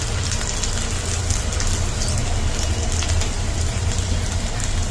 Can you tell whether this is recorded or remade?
recorded